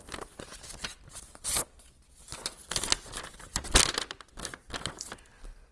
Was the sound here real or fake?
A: real